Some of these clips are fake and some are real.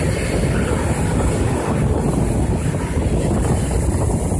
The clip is real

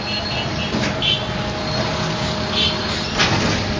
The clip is real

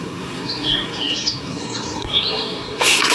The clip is fake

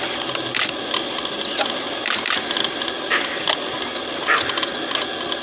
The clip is real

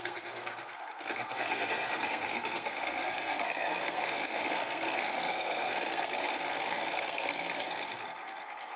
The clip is fake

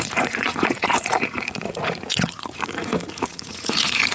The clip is fake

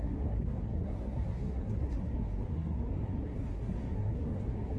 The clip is fake